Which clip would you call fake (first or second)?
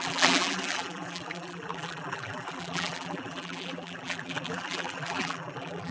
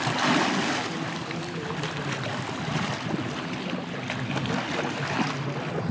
first